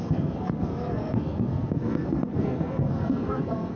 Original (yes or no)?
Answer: no